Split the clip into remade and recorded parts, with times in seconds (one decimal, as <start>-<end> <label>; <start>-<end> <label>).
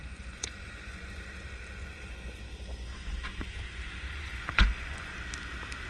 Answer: 0.0-1.3 remade; 1.3-1.8 recorded; 1.8-5.1 remade; 5.1-5.9 recorded